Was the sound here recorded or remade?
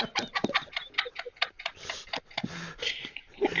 recorded